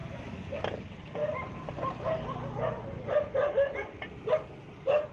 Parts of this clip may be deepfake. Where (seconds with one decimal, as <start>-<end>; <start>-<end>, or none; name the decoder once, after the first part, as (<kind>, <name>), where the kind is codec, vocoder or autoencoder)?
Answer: 0.0-0.6 (autoencoder, DAC-VAE)